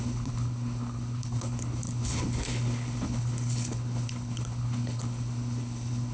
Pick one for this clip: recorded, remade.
remade